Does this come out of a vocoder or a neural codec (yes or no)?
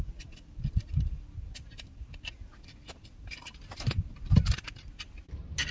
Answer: no